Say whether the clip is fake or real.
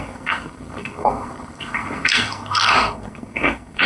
fake